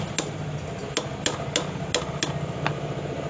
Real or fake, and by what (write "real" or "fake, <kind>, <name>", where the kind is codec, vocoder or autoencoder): real